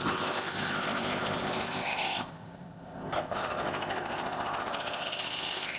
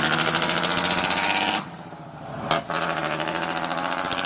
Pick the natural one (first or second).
second